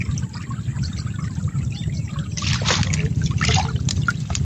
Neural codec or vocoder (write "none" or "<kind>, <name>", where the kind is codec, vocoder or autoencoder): none